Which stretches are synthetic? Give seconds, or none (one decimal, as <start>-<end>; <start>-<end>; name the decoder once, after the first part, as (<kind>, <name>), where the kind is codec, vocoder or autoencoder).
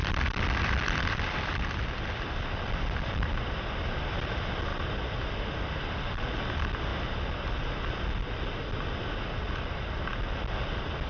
0.0-4.3 (vocoder, BigVGAN v2); 4.7-5.9